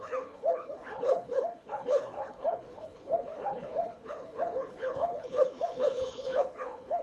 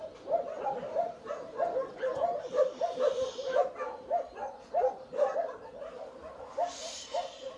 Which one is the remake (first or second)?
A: first